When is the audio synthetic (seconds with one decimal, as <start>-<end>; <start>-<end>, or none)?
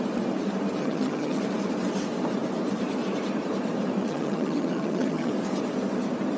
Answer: 0.8-1.4; 4.0-5.3